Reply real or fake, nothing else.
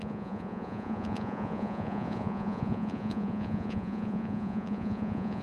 fake